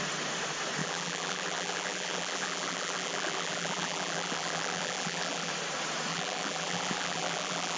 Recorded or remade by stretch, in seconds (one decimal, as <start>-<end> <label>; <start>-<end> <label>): 0.0-0.8 recorded; 0.8-5.5 remade; 5.5-6.1 recorded; 6.1-7.8 remade